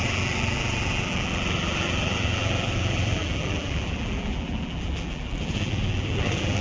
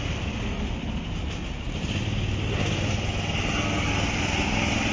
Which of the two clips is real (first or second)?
second